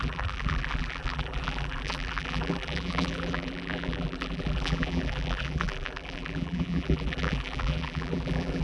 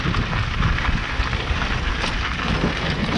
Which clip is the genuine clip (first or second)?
second